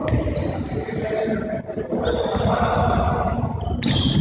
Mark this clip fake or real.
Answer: real